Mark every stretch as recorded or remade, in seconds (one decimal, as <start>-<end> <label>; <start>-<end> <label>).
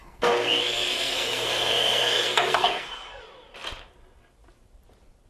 0.0-3.2 remade; 3.2-5.3 recorded